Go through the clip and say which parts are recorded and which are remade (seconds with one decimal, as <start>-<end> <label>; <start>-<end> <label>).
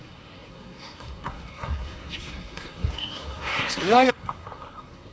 0.0-5.1 remade